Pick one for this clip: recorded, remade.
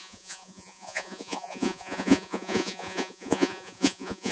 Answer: remade